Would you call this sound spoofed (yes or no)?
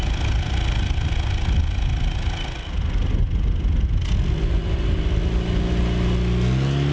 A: no